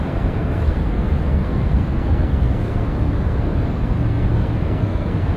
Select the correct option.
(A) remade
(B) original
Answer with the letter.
A